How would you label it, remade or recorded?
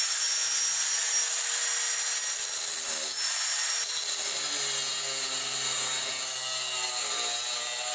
recorded